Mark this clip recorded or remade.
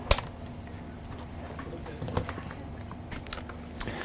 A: recorded